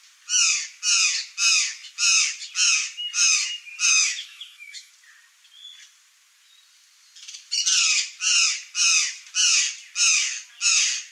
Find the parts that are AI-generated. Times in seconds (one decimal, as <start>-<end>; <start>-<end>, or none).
3.9-4.9